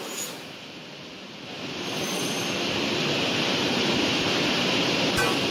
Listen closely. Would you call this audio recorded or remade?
recorded